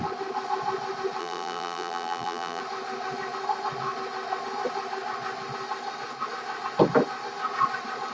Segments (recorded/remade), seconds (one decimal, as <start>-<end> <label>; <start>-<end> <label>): 0.0-1.2 recorded; 1.2-2.6 remade; 2.6-8.1 recorded